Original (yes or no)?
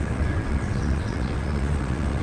no